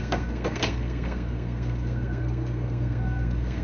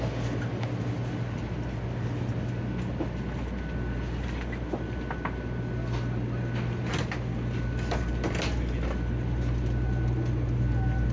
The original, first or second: second